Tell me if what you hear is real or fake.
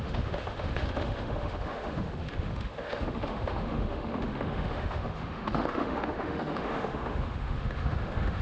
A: fake